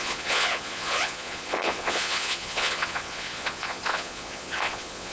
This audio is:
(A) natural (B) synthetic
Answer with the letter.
B